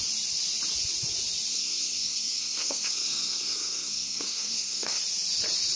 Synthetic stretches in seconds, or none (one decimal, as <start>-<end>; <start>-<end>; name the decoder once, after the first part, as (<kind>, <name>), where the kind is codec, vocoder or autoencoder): 1.5-5.0 (codec, SNAC)